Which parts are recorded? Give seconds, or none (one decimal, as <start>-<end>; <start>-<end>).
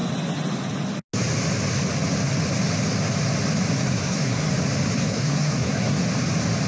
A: 0.0-3.8; 4.5-5.0; 6.0-6.7